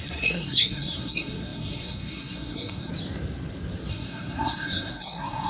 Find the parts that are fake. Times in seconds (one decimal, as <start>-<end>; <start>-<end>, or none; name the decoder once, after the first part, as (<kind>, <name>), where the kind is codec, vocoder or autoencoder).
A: 0.0-2.9 (codec, SNAC); 3.9-5.5